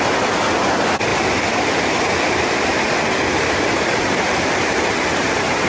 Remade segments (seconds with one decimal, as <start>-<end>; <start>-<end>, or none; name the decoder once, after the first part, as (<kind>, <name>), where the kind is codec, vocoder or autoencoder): 1.1-4.5 (vocoder, BigVGAN v2)